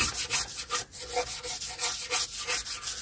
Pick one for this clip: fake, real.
real